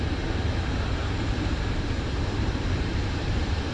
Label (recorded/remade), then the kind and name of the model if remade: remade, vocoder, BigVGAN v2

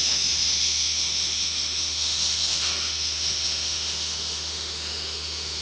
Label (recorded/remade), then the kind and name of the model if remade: remade, autoencoder, DAC-VAE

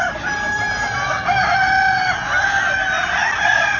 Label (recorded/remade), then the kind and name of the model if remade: recorded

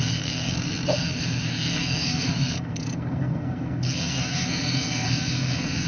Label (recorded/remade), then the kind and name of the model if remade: remade, codec, SNAC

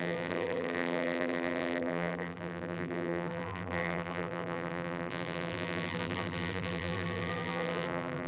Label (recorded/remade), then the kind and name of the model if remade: remade, vocoder, BigVGAN v2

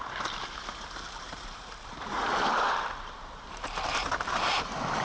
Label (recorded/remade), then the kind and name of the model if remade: remade, vocoder, BigVGAN v2